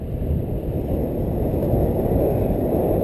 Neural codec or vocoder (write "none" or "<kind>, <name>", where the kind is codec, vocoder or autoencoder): none